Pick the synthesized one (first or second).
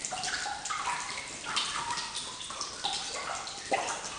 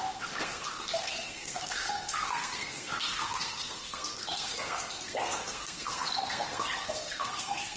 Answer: second